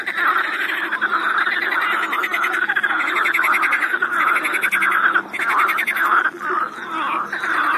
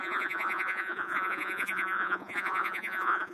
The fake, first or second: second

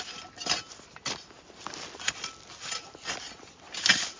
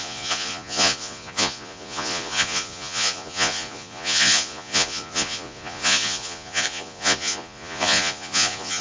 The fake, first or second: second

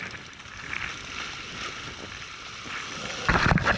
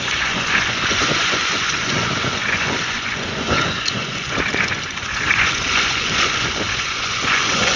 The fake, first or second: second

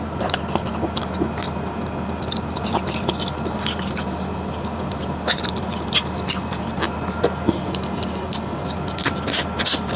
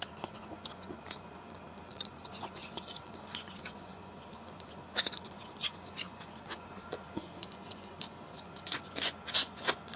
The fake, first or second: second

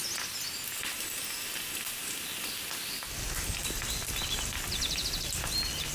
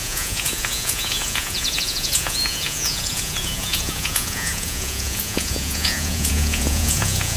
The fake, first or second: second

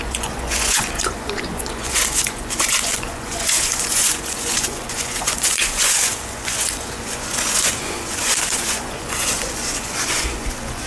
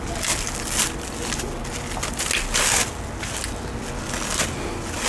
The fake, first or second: first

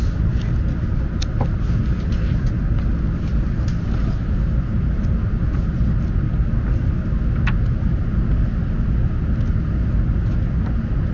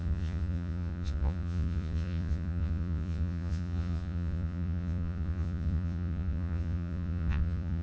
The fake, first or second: second